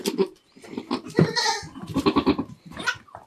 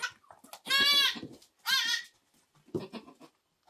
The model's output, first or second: first